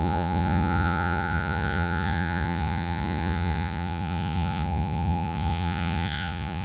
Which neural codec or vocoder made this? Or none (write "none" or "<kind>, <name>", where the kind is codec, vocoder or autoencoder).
vocoder, Vocos